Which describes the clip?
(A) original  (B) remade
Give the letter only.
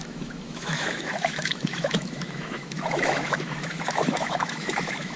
B